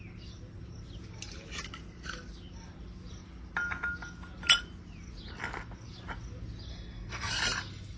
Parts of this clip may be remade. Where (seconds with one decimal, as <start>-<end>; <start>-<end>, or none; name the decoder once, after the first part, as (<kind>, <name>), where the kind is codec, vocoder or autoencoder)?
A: 6.7-7.3 (codec, SNAC)